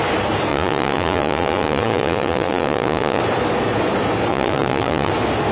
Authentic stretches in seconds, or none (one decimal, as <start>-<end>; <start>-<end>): 0.0-0.5; 3.2-4.3; 5.1-5.5